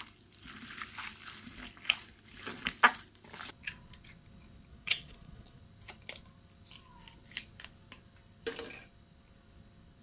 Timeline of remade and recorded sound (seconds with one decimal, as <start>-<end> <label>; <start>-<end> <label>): 0.0-4.7 recorded; 4.7-5.6 remade; 5.6-10.0 recorded